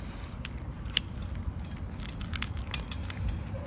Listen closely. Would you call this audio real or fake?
real